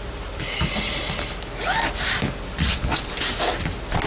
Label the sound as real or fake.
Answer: real